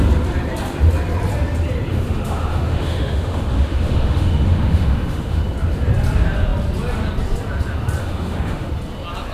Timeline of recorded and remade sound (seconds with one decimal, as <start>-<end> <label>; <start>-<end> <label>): 0.0-1.9 recorded; 1.9-5.4 remade; 5.4-8.0 recorded; 8.0-8.7 remade; 8.7-9.3 recorded